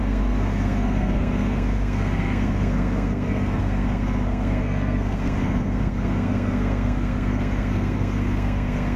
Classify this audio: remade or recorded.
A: remade